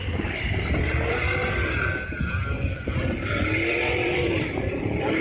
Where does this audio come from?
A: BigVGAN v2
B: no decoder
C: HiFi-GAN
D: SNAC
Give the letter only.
A